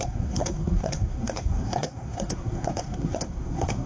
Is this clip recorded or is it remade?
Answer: remade